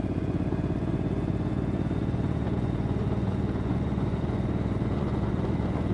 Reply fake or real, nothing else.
fake